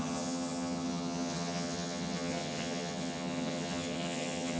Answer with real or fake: fake